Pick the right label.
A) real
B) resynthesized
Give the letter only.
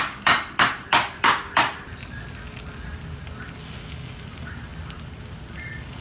A